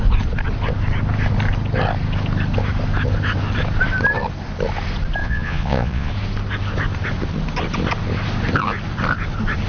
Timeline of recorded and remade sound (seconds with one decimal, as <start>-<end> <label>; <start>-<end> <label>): 0.0-5.2 recorded; 5.2-6.1 remade; 6.1-9.7 recorded